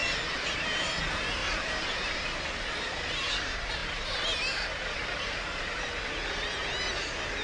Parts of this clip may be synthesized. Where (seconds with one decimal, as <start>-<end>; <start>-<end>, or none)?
0.0-1.0; 1.4-3.3; 3.8-5.9